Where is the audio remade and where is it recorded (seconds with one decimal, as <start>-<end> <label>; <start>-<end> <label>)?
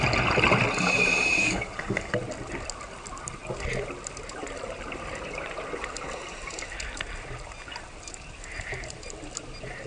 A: 0.0-1.4 recorded; 1.4-2.1 remade; 2.1-9.9 recorded